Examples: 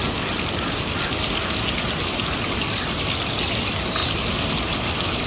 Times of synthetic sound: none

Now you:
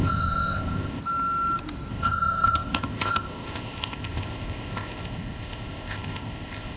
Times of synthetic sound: 0.0-1.0; 1.9-6.8